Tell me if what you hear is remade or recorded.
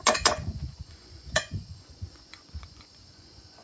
remade